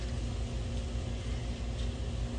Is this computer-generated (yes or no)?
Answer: no